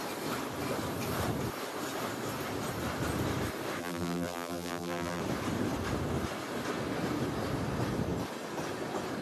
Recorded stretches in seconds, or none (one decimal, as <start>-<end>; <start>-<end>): 0.0-3.8; 5.2-9.2